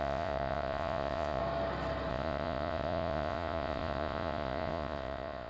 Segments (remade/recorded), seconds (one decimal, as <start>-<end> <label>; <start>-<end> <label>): 0.0-1.4 remade; 1.4-2.1 recorded; 2.1-5.5 remade